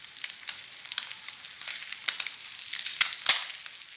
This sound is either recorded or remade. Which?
recorded